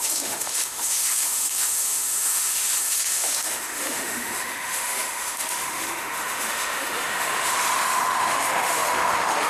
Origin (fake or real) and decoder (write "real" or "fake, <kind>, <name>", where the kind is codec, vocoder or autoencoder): fake, autoencoder, DAC-VAE